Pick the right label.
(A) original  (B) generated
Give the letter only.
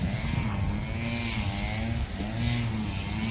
A